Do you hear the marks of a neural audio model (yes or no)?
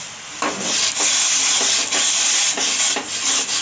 no